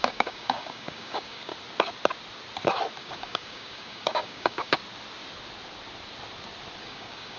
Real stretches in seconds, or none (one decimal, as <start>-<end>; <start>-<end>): 1.5-3.0; 4.8-6.8